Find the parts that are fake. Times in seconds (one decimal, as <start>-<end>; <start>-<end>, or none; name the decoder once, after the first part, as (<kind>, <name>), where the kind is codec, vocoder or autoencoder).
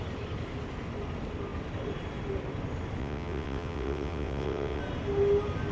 3.0-4.8 (vocoder, WaveNeXt)